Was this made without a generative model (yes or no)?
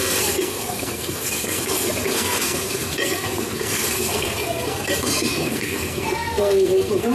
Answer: no